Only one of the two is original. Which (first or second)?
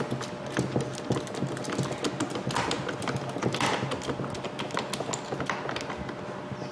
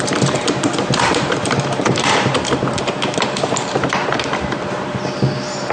first